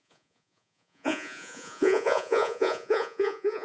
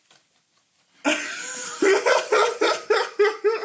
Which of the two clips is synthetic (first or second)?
first